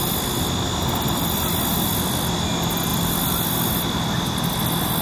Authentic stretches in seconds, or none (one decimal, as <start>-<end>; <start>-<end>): 0.0-5.0